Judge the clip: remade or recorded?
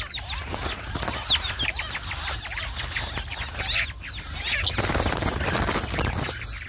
recorded